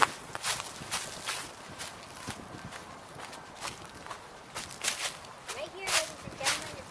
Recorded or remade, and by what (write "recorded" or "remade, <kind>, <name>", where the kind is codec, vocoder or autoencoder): recorded